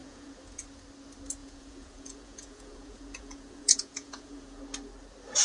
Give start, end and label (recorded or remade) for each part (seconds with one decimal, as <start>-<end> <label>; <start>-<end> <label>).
0.0-0.7 remade; 0.7-1.4 recorded; 1.4-4.6 remade; 4.6-5.4 recorded

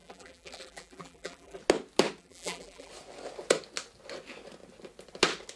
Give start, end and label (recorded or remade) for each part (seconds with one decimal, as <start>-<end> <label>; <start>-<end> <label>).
0.0-1.6 remade; 1.6-2.2 recorded; 2.2-2.9 remade; 2.9-5.6 recorded

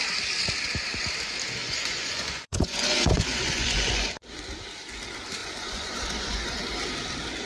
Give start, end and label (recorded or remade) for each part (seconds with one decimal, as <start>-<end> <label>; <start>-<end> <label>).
0.0-1.6 recorded; 1.6-4.4 remade; 4.4-5.4 recorded; 5.4-6.6 remade; 6.6-7.5 recorded